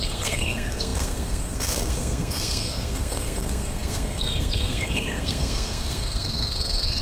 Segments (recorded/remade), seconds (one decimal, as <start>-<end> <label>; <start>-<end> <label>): 0.0-7.0 remade